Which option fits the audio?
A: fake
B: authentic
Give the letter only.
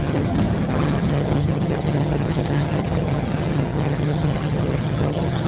A